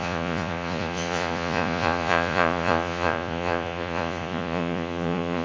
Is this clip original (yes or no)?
no